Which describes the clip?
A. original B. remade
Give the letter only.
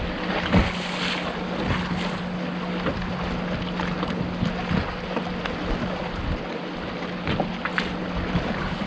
A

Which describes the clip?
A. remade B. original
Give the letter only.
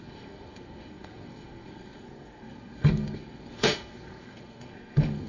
A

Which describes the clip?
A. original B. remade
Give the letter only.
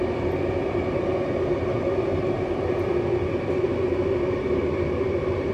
A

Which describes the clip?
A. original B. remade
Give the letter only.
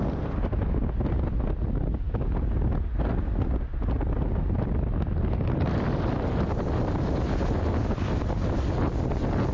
A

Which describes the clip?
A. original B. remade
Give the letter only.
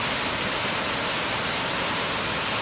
A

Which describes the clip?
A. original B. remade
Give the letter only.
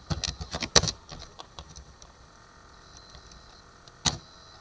A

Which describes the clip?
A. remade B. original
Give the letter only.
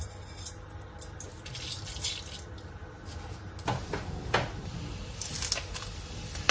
B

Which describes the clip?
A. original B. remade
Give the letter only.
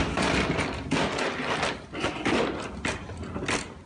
A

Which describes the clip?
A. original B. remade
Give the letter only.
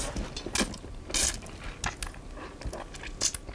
A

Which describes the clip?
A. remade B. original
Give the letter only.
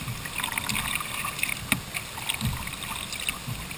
B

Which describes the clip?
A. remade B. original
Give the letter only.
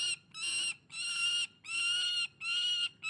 B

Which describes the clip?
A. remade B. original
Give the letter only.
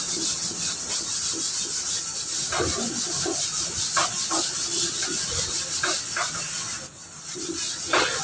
B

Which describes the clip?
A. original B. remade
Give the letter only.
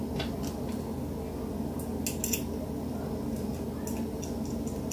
A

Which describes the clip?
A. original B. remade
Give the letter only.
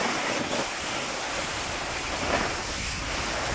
A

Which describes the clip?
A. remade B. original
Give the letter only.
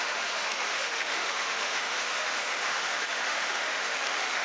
A